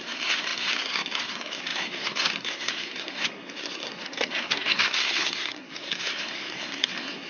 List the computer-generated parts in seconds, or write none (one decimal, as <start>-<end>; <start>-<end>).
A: 0.0-7.3